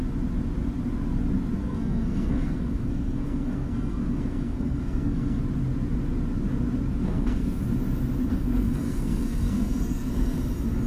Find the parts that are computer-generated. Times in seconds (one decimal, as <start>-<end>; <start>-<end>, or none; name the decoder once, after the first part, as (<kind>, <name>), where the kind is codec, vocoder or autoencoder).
1.6-5.4 (codec, SNAC); 7.0-7.6; 8.3-10.4